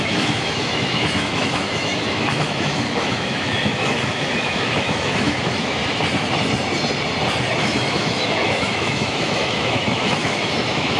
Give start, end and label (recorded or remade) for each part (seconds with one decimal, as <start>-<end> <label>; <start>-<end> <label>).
0.0-5.8 remade; 5.8-7.5 recorded; 7.5-11.0 remade